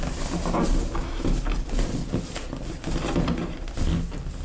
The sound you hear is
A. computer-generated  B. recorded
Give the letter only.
B